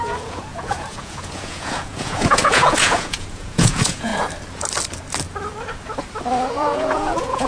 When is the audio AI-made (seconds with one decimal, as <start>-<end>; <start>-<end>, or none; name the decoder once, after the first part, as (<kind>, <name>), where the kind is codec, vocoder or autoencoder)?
0.0-4.1 (vocoder, Vocos); 6.5-7.5